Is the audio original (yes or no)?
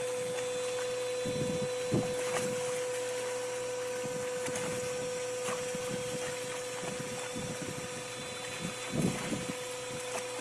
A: yes